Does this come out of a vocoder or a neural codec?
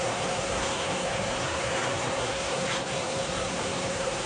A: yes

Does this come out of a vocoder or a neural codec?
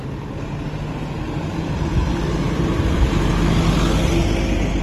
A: no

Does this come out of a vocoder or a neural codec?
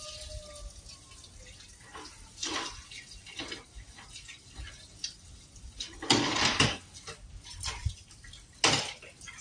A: no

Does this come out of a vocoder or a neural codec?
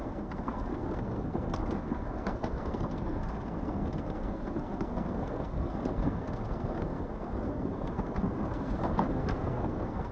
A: yes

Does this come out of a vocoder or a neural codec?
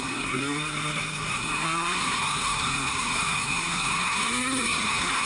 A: yes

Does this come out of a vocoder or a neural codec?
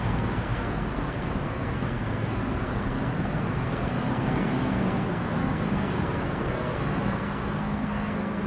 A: yes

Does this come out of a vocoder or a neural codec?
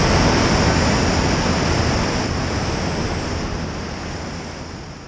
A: no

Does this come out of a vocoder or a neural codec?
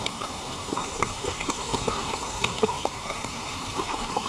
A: yes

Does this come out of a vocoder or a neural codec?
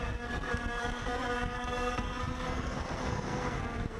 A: yes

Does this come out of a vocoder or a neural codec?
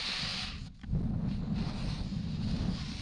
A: no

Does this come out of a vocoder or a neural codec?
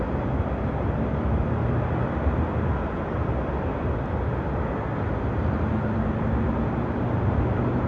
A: no